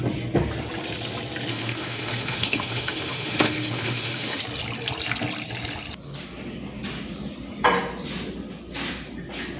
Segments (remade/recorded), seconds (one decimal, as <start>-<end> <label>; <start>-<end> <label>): 0.0-1.5 recorded; 1.5-4.4 remade; 4.4-9.6 recorded

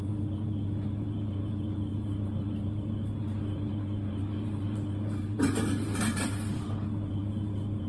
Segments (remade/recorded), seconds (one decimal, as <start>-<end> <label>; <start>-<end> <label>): 0.0-7.9 remade

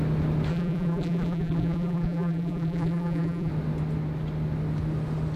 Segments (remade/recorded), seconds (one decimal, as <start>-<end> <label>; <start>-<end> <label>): 0.0-0.5 recorded; 0.5-3.5 remade; 3.5-5.4 recorded

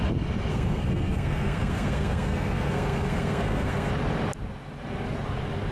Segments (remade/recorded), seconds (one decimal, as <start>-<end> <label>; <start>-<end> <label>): 0.0-0.5 recorded; 0.5-3.9 remade; 3.9-5.7 recorded